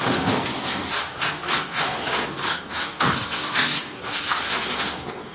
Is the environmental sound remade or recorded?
remade